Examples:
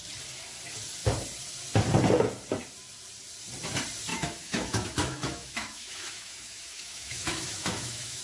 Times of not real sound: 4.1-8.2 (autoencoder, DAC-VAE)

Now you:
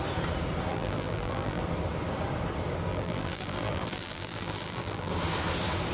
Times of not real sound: 0.7-1.6 (vocoder, BigVGAN v2); 2.9-5.1

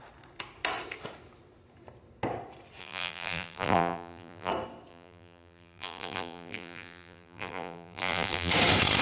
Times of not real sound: 2.8-4.5 (vocoder, BigVGAN v2); 4.9-8.5

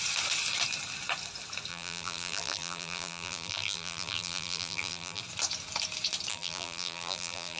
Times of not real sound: 1.7-5.2 (vocoder, BigVGAN v2); 6.3-7.6

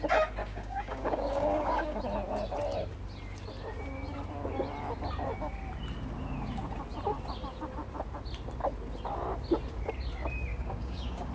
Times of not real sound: 0.4-2.0 (codec, DAC); 10.5-11.3